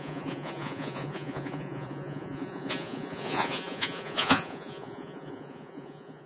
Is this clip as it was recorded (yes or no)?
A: no